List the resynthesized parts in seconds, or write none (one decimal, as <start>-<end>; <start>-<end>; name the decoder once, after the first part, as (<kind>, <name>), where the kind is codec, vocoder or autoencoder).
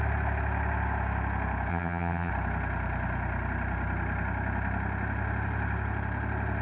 1.7-2.3 (vocoder, HiFi-GAN)